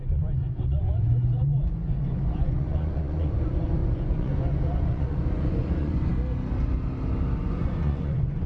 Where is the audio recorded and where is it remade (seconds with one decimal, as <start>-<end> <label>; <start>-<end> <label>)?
0.0-6.1 remade; 6.1-7.4 recorded; 7.4-8.5 remade